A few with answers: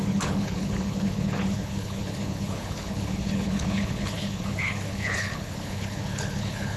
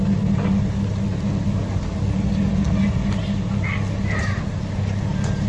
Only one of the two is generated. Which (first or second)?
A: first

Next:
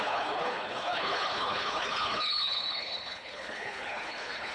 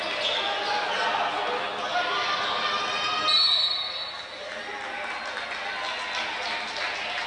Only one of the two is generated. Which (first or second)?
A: first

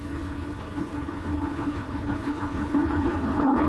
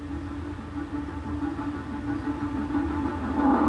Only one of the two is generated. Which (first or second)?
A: first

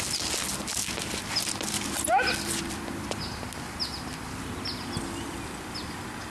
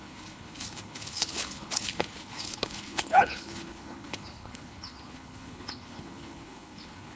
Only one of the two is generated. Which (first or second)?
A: second